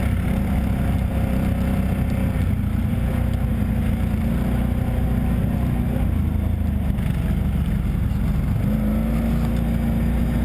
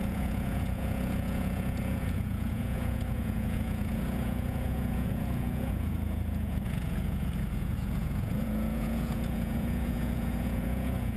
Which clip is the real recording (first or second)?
first